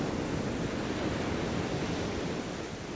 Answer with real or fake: real